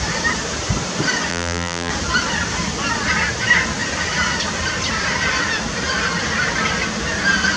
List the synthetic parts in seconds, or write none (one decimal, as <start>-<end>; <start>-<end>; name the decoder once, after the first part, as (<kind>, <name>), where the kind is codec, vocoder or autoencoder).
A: 1.3-1.9 (vocoder, BigVGAN v2)